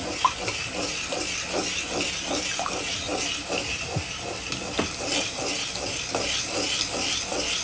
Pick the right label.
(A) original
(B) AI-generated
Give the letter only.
A